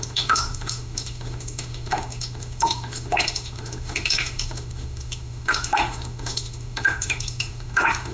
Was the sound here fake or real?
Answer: fake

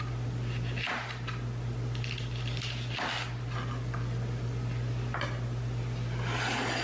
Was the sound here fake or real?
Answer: real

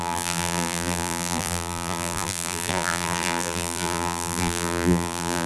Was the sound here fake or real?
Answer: fake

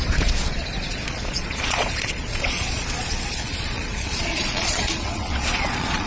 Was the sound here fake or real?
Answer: fake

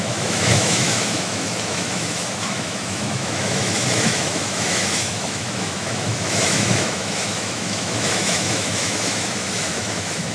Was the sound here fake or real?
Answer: fake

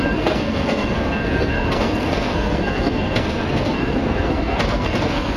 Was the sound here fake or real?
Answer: fake